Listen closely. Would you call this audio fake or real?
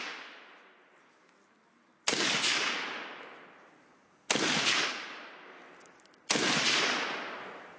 real